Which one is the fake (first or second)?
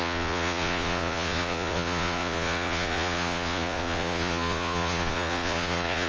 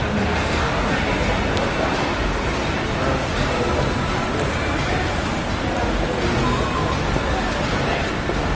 first